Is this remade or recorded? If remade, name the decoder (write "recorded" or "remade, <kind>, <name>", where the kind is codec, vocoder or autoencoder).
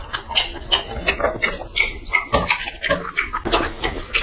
recorded